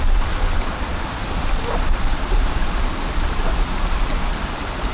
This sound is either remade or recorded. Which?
recorded